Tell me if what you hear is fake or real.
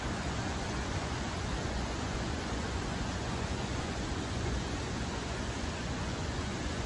fake